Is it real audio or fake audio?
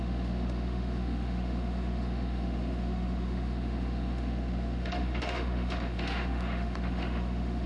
fake